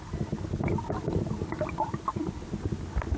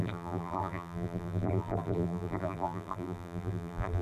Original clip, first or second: first